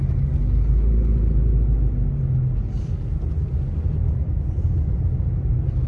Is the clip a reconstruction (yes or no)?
no